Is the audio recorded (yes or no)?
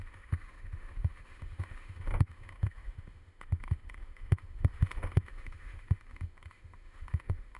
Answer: no